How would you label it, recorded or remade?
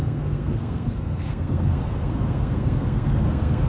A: remade